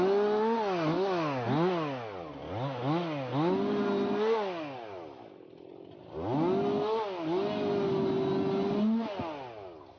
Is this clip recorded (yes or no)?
yes